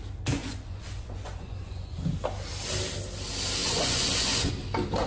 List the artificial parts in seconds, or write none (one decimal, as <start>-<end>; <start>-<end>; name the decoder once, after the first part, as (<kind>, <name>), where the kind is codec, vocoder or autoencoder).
0.4-2.0 (vocoder, Vocos); 3.6-4.5